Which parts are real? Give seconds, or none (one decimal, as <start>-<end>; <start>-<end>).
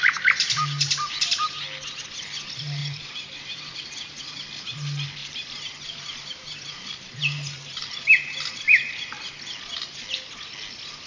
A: 0.0-2.8; 4.2-5.2; 9.2-11.1